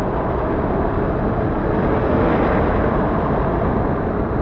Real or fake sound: real